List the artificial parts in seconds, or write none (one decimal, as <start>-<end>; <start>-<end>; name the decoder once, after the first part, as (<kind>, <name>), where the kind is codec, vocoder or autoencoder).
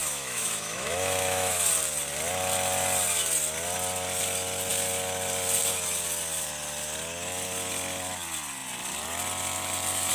0.0-1.7 (autoencoder, DAC-VAE)